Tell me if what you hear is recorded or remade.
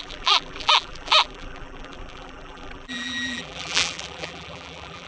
remade